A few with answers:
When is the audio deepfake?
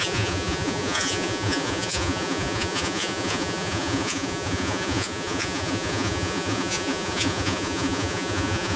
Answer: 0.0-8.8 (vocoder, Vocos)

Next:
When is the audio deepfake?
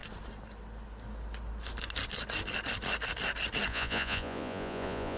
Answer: 3.7-5.2 (vocoder, Vocos)